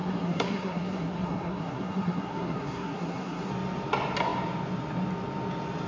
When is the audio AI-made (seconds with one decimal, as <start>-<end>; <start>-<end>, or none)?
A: 0.0-3.5